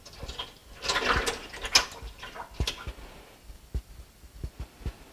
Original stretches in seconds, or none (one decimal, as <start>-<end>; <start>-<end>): 0.0-5.1